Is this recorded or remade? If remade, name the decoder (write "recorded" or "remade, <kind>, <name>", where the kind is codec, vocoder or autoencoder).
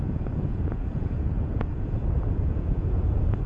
remade, vocoder, Vocos